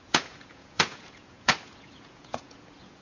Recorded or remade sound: remade